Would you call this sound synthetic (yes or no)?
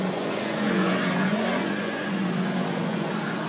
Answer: yes